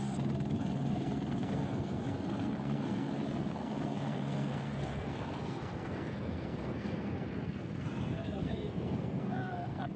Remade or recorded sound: remade